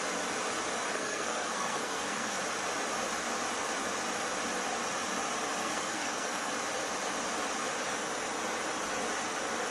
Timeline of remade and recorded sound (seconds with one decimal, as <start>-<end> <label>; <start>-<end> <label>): 0.0-0.9 recorded; 0.9-2.4 remade; 2.4-5.6 recorded; 5.6-6.5 remade; 6.5-9.7 recorded